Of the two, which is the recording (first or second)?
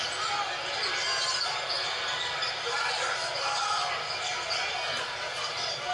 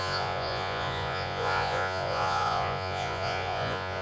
first